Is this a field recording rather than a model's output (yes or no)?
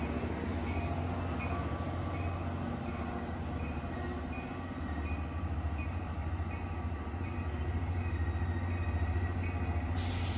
yes